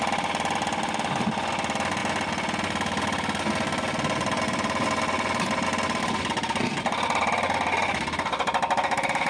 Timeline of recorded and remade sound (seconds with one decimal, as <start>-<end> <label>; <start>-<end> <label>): 0.0-9.3 recorded